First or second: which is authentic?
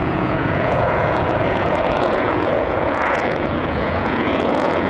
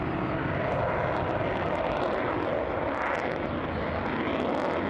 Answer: second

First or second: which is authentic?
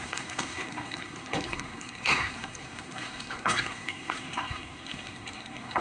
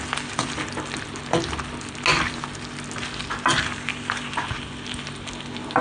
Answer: second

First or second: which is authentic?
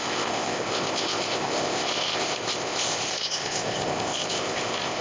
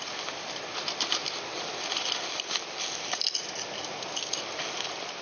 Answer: second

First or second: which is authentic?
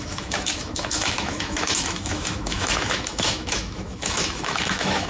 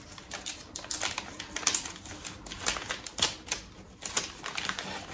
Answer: second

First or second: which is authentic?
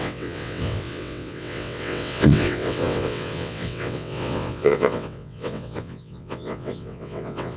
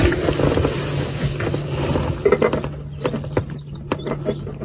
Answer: second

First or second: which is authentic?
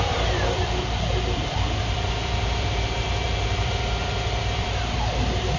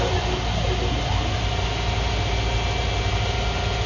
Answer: second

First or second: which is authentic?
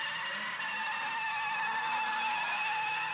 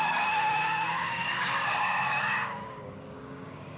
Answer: first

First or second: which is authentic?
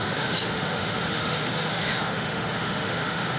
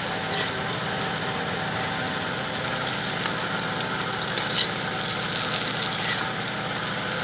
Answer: second